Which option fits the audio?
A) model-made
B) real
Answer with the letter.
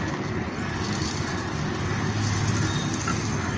B